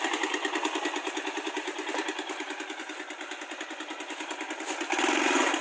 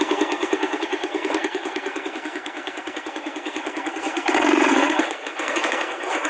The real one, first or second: first